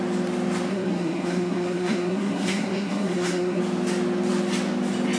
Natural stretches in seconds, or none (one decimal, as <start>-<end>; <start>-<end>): 0.0-0.7; 3.6-5.2